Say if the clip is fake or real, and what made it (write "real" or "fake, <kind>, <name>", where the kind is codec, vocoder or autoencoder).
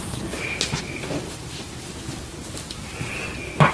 real